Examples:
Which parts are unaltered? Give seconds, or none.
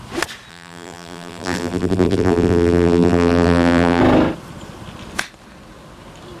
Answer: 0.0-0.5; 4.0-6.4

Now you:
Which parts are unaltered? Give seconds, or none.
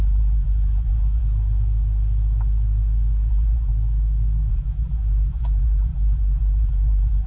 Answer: 1.2-3.3; 3.7-4.5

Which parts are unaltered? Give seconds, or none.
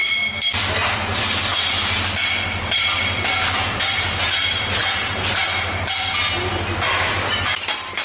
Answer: 0.0-0.7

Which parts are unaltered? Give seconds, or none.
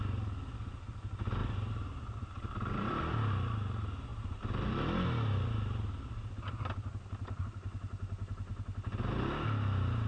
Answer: 0.0-1.4; 3.0-10.1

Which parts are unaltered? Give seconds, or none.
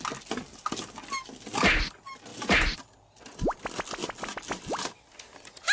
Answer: 0.0-2.3; 2.8-4.0; 4.9-5.7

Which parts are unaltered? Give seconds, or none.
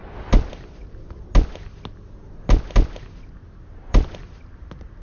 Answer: 0.0-3.4; 4.2-5.0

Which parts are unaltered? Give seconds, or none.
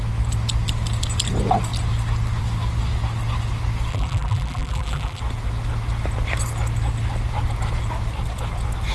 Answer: 0.0-3.9; 5.2-8.9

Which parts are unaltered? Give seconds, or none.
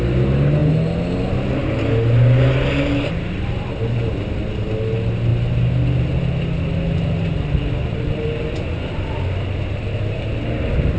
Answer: 0.0-11.0